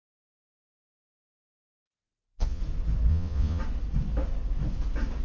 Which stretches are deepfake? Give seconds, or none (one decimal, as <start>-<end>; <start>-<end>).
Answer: 0.0-2.6; 3.1-3.6